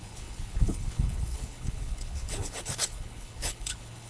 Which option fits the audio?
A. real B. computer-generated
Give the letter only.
B